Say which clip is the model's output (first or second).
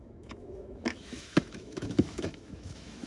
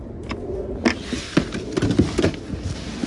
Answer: first